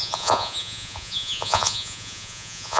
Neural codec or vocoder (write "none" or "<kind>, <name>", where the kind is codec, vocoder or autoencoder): vocoder, Vocos